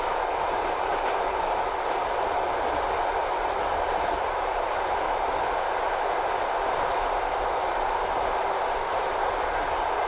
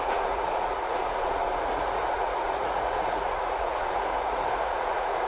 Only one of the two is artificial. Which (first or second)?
second